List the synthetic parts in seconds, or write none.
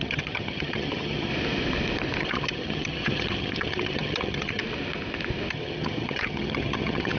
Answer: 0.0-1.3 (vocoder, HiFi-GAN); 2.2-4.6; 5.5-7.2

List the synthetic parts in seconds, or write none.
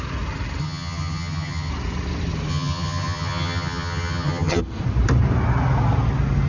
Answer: 0.6-1.7 (vocoder, HiFi-GAN); 2.5-4.6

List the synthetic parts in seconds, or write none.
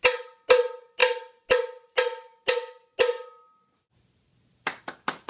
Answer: none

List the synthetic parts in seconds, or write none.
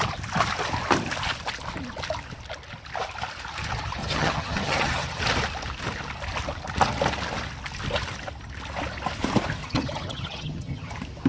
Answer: 4.0-5.2 (vocoder, HiFi-GAN); 9.6-10.9